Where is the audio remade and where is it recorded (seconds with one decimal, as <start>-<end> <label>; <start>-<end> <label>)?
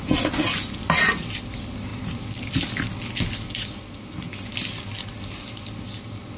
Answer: 0.0-1.9 recorded; 1.9-2.7 remade; 2.7-6.4 recorded